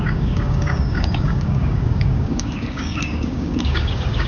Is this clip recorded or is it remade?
remade